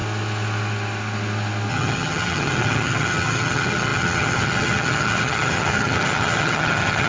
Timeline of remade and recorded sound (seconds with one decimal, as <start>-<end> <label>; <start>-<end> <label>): 0.0-1.7 recorded; 1.7-7.1 remade